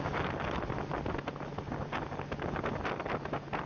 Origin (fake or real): real